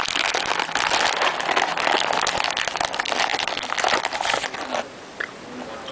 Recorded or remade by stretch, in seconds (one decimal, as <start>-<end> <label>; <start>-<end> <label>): 0.0-5.9 recorded